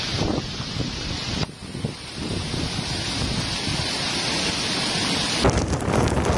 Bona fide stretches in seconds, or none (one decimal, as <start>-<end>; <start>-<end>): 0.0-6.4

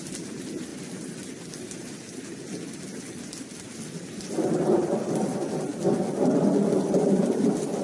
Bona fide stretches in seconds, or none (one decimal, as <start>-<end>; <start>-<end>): 0.0-7.8

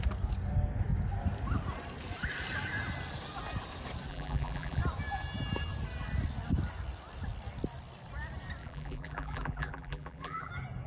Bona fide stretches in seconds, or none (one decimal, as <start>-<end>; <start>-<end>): 0.0-4.1; 4.8-8.6; 10.5-10.9

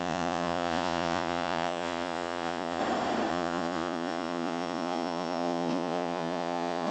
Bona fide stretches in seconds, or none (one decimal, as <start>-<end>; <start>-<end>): 2.8-3.3

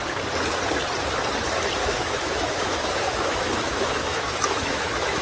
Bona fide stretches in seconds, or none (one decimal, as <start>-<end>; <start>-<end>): 0.0-1.8

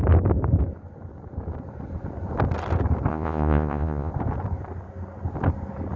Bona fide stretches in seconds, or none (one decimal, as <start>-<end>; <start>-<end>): 0.0-3.1; 4.1-6.0

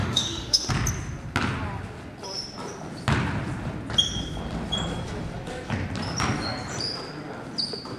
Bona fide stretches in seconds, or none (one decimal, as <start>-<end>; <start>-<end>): 0.7-8.0

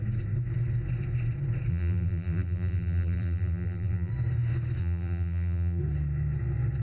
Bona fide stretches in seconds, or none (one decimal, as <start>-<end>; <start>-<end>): 0.0-1.7; 4.1-4.8; 5.8-6.8